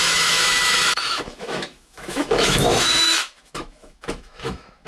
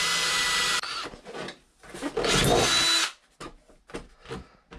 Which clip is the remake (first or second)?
first